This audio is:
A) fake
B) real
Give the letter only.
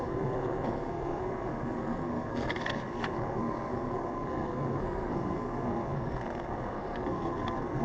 A